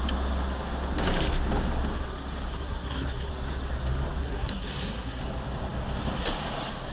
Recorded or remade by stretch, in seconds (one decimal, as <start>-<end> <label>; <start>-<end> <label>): 0.0-2.5 recorded; 2.5-3.3 remade; 3.3-4.2 recorded; 4.2-5.2 remade; 5.2-6.9 recorded